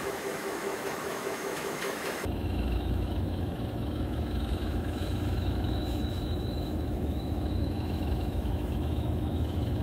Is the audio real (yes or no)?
no